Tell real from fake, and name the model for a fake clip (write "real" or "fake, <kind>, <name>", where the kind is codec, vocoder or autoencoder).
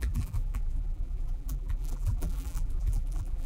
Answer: fake, vocoder, BigVGAN v2